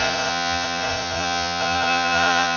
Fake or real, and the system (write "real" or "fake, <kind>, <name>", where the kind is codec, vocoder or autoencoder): fake, vocoder, Vocos